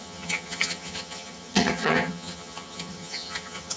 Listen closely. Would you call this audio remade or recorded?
remade